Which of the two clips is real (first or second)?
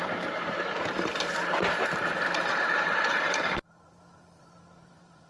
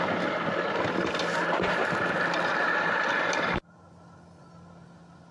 second